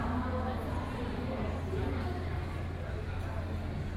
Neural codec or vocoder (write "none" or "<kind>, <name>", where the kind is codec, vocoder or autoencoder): none